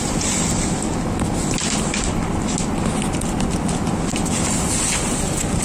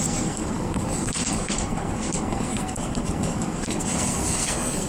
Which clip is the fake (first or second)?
second